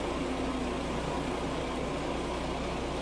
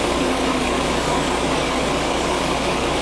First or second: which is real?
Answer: first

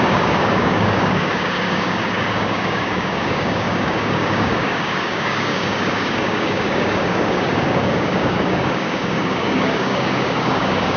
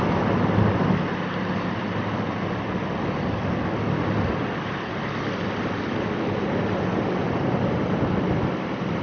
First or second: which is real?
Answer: second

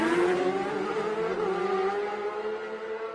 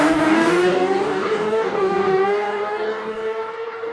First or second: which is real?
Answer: first